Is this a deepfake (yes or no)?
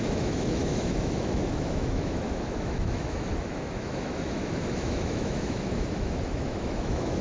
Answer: yes